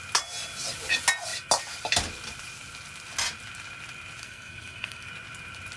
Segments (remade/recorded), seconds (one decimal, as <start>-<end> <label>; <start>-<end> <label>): 0.0-4.2 recorded; 4.2-5.1 remade; 5.1-5.8 recorded